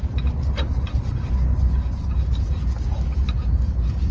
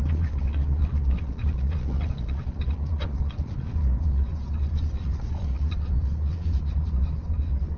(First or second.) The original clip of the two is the first